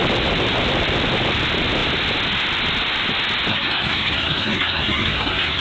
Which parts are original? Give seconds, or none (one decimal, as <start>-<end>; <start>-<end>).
0.0-3.5